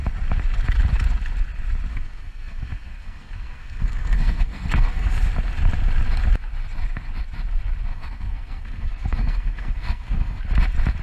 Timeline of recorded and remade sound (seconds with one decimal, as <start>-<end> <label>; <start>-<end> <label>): 0.0-1.9 recorded; 1.9-5.1 remade; 5.1-7.9 recorded; 7.9-10.4 remade; 10.4-11.0 recorded